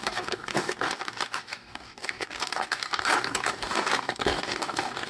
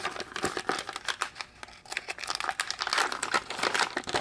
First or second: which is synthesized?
first